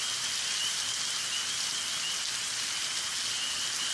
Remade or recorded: recorded